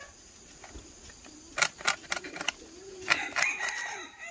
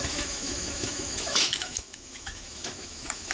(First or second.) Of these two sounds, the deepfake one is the second